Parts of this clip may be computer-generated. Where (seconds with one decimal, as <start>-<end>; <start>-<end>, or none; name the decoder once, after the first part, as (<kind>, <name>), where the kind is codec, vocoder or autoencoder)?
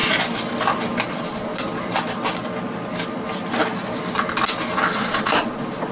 1.1-1.5 (vocoder, Vocos); 4.9-5.9